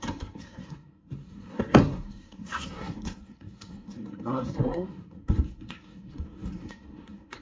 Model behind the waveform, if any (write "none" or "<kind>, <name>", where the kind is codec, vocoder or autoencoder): codec, SNAC